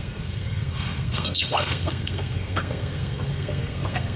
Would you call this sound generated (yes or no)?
yes